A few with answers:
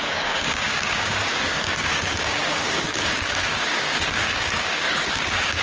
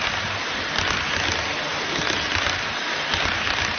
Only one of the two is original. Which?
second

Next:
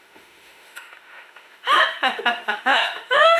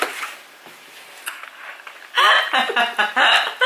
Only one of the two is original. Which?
second